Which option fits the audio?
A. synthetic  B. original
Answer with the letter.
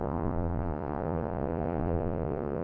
A